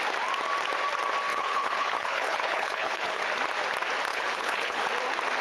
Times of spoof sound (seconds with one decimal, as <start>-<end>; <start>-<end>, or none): 1.3-3.2; 4.1-4.9